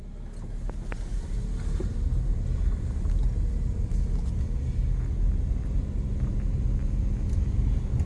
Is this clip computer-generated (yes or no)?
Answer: no